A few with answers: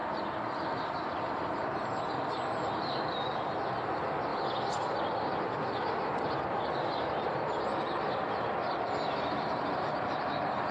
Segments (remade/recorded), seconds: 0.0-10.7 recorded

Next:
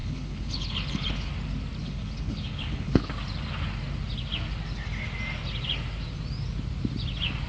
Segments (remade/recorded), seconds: 0.0-1.3 remade; 1.3-1.8 recorded; 1.8-3.1 remade; 3.1-7.5 recorded

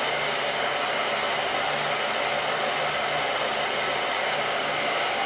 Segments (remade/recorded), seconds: 0.0-1.0 remade; 1.0-4.2 recorded; 4.2-5.3 remade

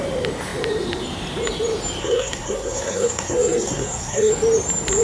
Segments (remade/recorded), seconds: 0.0-2.0 recorded; 2.0-4.3 remade; 4.3-5.0 recorded